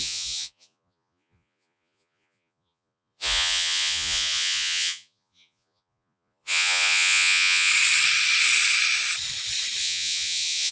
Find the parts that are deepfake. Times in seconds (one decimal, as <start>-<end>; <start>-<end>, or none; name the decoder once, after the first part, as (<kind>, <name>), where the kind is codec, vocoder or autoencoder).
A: 0.0-7.7 (vocoder, Vocos); 9.8-10.7